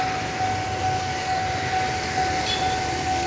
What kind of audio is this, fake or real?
real